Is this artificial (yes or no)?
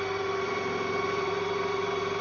yes